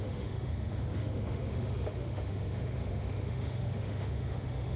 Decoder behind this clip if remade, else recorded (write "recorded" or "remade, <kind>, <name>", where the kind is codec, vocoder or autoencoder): remade, autoencoder, DAC-VAE